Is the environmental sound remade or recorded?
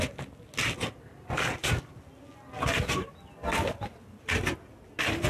recorded